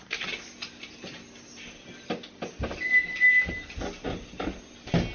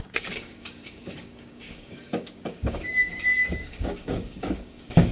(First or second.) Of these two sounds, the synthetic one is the second